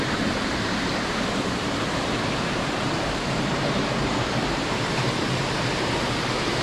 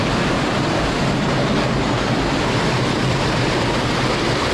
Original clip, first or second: second